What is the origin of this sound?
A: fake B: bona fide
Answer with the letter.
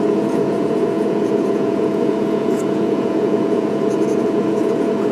A